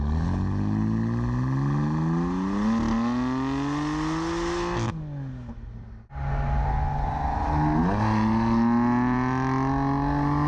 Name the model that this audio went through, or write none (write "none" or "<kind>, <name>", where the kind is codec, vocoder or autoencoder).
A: none